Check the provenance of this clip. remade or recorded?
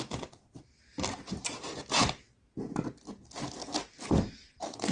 recorded